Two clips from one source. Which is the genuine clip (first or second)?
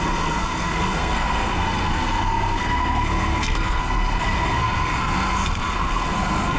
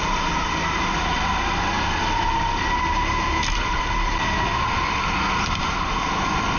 second